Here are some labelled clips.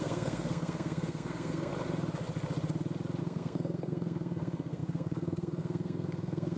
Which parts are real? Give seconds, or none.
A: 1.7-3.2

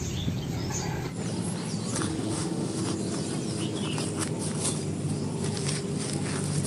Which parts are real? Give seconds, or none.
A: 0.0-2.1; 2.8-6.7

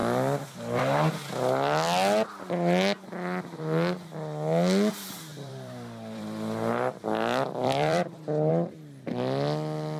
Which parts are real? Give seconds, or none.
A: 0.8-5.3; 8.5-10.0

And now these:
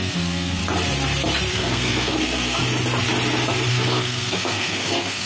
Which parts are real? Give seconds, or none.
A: 0.6-1.5; 2.6-3.7

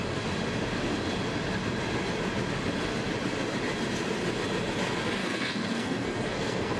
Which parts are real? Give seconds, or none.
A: 0.0-5.2

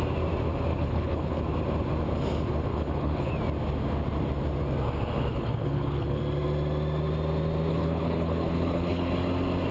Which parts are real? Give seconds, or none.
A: 0.0-0.7; 1.4-2.7; 3.3-5.3; 6.2-7.7; 9.1-9.7

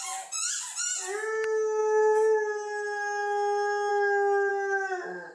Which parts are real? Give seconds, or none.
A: 0.0-5.3

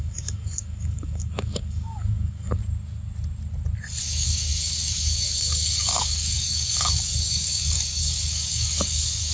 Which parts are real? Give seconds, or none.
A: 2.6-4.0